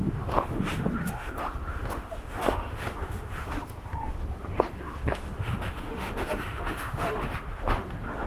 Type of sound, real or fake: fake